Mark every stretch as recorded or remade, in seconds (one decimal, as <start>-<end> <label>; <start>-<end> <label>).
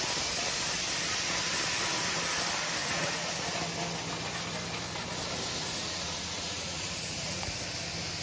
0.0-2.8 recorded; 2.8-3.3 remade; 3.3-5.6 recorded; 5.6-7.4 remade; 7.4-8.2 recorded